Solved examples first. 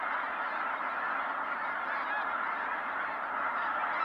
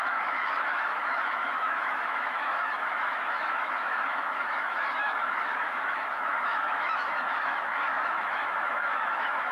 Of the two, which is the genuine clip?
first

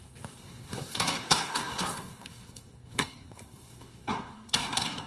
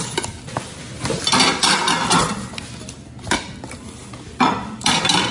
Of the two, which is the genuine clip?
second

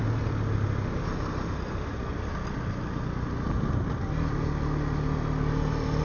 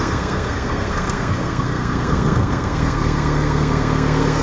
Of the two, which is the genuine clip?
first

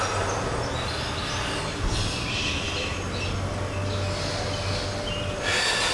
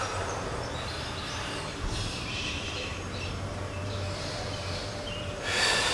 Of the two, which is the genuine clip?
first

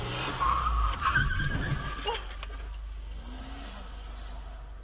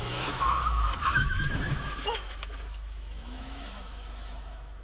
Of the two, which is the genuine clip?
first